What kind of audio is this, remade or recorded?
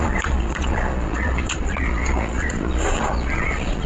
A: remade